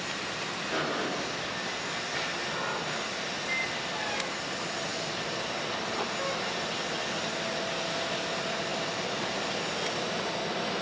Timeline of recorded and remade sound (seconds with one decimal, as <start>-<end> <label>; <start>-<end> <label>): 0.0-10.8 recorded